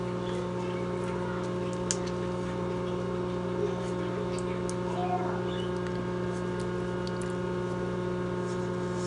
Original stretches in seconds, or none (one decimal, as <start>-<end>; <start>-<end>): 0.0-9.1